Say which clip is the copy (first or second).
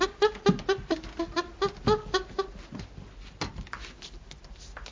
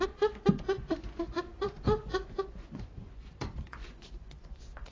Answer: second